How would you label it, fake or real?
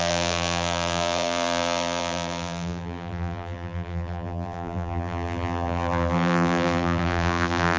fake